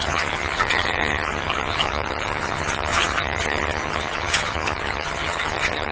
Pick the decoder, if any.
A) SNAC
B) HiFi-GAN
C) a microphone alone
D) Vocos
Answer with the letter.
B